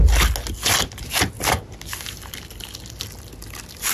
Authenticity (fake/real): real